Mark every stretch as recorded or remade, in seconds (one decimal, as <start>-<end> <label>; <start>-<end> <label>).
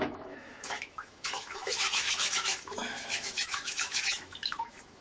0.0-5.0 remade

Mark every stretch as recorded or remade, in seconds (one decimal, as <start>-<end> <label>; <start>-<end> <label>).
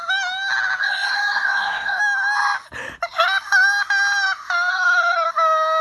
0.0-0.8 recorded; 0.8-2.0 remade; 2.0-4.7 recorded; 4.7-5.3 remade; 5.3-5.8 recorded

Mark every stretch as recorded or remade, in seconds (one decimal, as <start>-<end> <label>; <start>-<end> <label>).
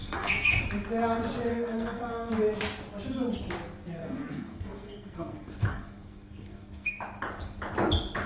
0.0-0.6 remade; 0.6-1.5 recorded; 1.5-2.3 remade; 2.3-4.0 recorded; 4.0-7.0 remade; 7.0-8.3 recorded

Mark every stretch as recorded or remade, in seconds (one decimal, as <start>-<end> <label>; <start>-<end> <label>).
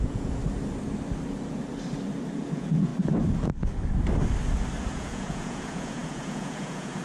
0.0-0.4 remade; 0.4-2.3 recorded; 2.3-2.9 remade; 2.9-4.8 recorded; 4.8-7.0 remade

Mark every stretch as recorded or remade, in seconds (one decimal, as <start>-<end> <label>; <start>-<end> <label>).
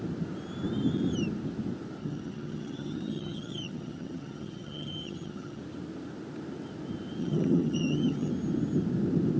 0.0-2.0 recorded; 2.0-5.6 remade; 5.6-7.2 recorded; 7.2-8.3 remade; 8.3-9.4 recorded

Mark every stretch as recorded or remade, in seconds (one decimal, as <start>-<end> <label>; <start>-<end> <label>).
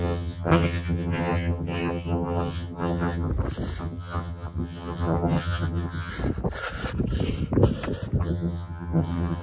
0.0-3.3 remade; 3.3-3.8 recorded; 3.8-6.1 remade; 6.1-8.2 recorded; 8.2-9.4 remade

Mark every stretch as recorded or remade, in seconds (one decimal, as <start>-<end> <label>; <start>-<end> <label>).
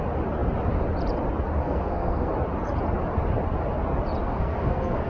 0.0-1.6 recorded; 1.6-2.3 remade; 2.3-4.2 recorded; 4.2-5.1 remade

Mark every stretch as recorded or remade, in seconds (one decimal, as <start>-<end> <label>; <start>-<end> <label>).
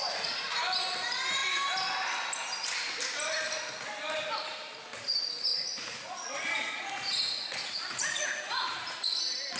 0.0-5.5 recorded; 5.5-9.2 remade; 9.2-9.6 recorded